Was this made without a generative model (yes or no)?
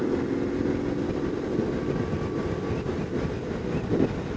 yes